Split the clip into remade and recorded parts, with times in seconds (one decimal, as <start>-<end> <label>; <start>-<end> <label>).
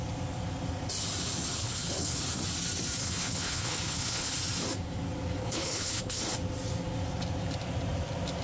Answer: 0.0-1.6 recorded; 1.6-2.2 remade; 2.2-3.0 recorded; 3.0-4.3 remade; 4.3-5.4 recorded; 5.4-6.2 remade; 6.2-8.4 recorded